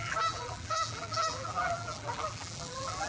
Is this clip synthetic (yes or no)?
yes